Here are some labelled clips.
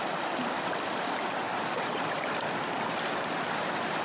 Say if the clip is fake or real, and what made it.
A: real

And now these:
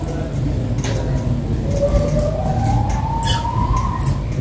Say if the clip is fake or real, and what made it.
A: real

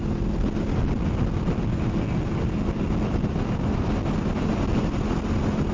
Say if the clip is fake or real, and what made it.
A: real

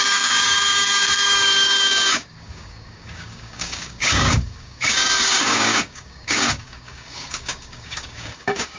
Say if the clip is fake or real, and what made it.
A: fake, codec, DAC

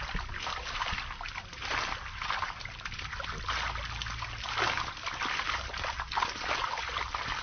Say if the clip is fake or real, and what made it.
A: real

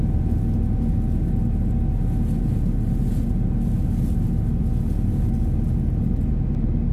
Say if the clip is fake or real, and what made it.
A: real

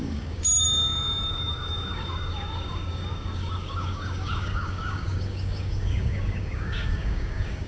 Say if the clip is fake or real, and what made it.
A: fake, codec, DAC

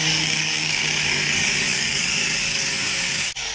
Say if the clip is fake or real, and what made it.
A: fake, codec, DAC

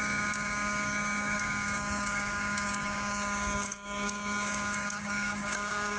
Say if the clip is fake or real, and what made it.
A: fake, codec, DAC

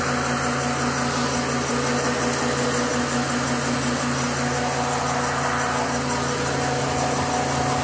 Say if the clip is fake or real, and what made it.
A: real